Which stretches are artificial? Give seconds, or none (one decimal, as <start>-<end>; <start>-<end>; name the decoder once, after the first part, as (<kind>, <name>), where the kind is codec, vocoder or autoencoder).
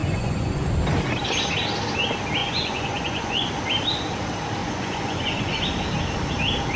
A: 0.0-0.7 (vocoder, Vocos); 2.4-3.5; 4.6-5.6